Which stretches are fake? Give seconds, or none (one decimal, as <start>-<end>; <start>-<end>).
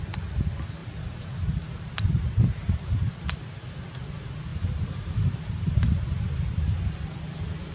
0.8-3.1; 4.5-6.1